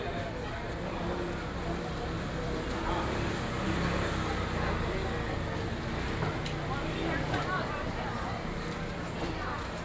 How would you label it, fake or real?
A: real